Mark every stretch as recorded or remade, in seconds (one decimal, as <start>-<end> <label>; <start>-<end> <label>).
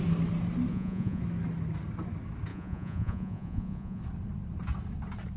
0.0-0.7 recorded; 0.7-1.2 remade; 1.2-2.5 recorded; 2.5-4.0 remade; 4.0-5.4 recorded